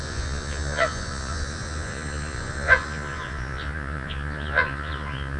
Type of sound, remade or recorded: remade